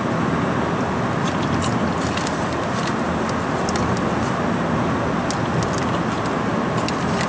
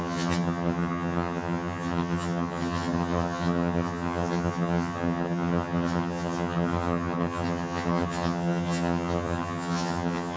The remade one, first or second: second